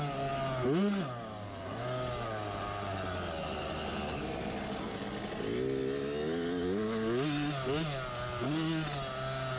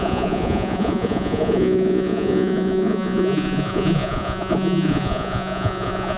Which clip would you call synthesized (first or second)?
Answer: second